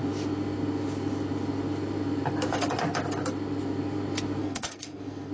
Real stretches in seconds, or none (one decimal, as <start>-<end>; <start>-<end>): 0.0-4.4